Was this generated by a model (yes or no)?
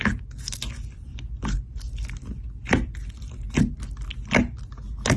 no